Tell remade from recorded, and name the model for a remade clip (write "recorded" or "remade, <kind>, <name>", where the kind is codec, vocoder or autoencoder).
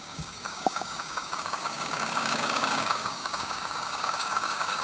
remade, codec, DAC